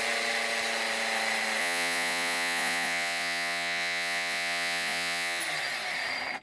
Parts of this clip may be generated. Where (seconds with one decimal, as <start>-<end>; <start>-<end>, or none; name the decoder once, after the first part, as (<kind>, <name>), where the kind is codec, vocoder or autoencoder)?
1.6-5.4 (vocoder, Vocos)